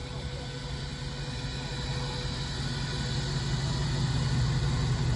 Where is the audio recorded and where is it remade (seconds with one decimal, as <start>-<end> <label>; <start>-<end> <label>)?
0.0-5.2 recorded